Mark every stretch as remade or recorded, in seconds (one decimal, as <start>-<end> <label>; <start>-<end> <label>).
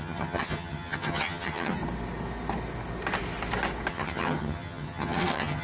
0.0-1.8 remade; 1.8-3.9 recorded; 3.9-5.6 remade